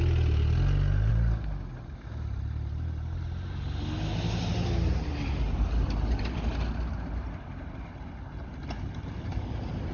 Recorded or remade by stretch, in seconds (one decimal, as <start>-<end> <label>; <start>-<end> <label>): 0.0-9.9 recorded